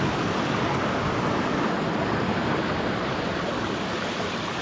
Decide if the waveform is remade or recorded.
recorded